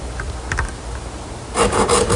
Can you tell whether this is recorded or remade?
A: remade